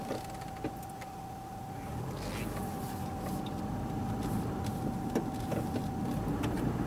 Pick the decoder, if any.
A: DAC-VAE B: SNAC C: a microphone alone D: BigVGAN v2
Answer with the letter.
C